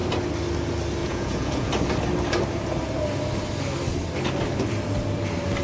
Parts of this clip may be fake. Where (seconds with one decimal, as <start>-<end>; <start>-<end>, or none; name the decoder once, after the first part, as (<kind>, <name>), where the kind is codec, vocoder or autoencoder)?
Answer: 1.0-1.7 (vocoder, Vocos)